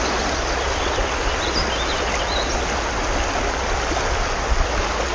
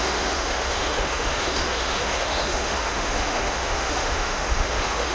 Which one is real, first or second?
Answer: first